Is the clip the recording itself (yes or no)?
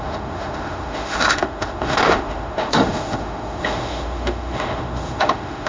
no